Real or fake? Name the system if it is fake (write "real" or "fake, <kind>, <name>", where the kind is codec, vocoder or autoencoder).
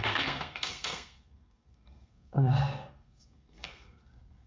fake, codec, SNAC